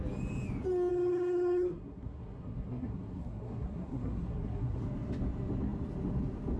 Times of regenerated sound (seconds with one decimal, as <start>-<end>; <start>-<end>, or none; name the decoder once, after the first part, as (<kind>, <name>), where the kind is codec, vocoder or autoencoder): 0.9-4.8 (codec, SNAC)